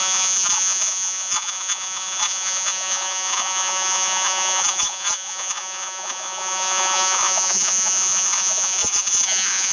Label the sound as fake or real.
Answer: fake